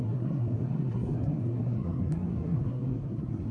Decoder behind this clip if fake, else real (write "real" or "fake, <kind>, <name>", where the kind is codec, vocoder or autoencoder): fake, codec, SNAC